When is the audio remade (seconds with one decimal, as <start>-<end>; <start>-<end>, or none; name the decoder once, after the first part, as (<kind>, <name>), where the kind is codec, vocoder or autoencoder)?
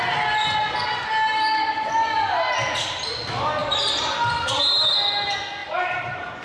3.6-4.6 (vocoder, BigVGAN v2); 5.6-6.4